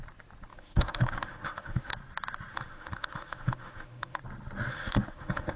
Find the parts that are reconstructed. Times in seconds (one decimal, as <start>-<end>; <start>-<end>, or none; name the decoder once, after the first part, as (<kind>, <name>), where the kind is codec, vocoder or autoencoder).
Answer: 0.5-1.9 (autoencoder, DAC-VAE); 2.5-4.2; 4.7-5.6